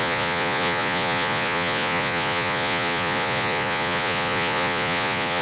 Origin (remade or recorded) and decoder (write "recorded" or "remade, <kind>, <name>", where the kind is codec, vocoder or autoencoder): remade, vocoder, Vocos